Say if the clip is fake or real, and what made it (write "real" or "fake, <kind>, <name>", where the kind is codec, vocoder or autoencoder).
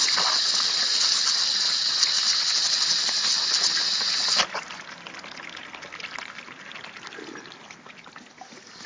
real